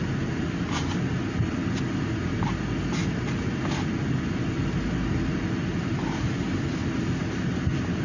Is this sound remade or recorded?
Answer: recorded